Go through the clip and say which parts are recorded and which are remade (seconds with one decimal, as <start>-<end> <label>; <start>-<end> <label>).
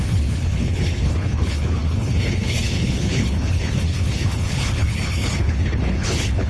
0.0-6.5 remade